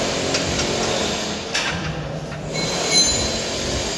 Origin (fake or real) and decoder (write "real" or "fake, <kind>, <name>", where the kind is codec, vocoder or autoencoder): real